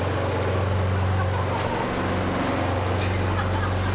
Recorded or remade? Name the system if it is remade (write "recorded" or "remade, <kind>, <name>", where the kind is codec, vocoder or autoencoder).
recorded